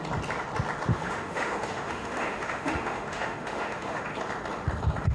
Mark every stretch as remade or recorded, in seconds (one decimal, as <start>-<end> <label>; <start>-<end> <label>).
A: 0.0-0.9 recorded; 0.9-4.0 remade; 4.0-5.1 recorded